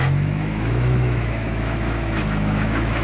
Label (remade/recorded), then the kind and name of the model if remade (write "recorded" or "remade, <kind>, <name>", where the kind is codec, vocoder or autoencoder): remade, autoencoder, DAC-VAE